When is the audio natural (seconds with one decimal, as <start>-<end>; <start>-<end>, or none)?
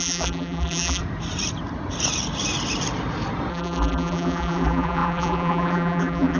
1.0-3.5